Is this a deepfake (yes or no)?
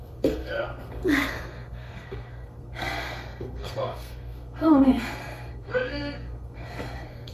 yes